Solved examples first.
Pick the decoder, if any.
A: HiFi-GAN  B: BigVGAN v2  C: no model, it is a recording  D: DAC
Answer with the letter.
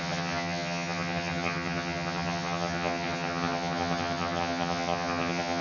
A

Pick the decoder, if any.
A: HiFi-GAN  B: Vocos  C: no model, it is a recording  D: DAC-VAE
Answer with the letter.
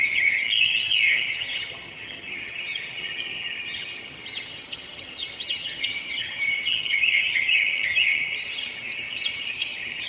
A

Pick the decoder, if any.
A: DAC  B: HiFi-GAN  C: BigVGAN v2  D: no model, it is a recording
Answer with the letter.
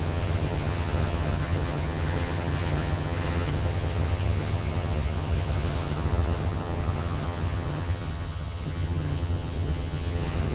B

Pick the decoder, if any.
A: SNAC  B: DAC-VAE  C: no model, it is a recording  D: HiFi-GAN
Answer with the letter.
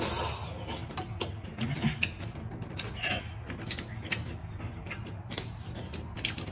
C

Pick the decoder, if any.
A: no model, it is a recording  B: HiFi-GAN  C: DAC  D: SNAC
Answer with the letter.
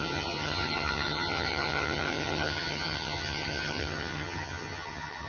B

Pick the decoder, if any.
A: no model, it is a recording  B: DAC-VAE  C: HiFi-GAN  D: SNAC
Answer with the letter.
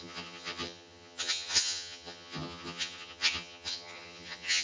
C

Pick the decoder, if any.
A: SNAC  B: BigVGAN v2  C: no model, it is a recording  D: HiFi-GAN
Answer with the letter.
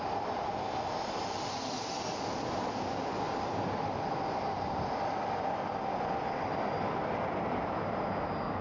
C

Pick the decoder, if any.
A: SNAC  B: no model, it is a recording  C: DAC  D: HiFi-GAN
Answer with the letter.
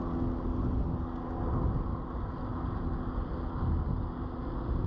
B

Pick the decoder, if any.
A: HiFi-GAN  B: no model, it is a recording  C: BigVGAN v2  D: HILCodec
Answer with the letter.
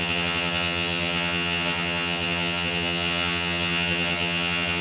A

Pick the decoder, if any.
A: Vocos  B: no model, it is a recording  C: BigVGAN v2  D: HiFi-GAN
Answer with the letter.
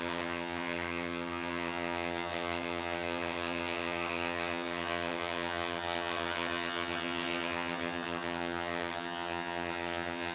D